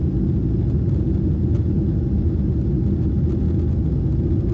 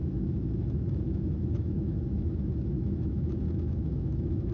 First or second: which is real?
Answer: first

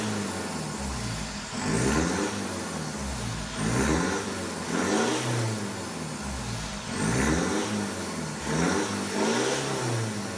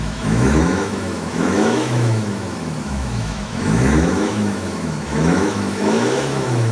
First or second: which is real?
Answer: first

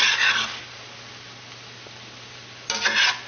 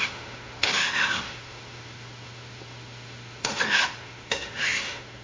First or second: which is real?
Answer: first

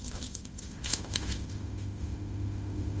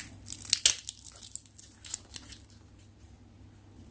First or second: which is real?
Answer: second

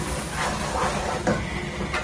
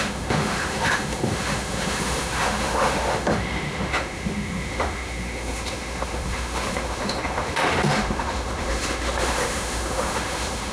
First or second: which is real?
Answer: first